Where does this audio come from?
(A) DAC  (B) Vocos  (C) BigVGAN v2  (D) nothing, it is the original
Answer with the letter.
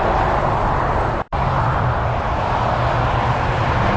C